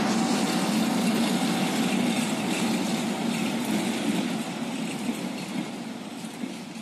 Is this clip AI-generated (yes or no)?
no